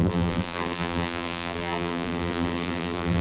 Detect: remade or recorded remade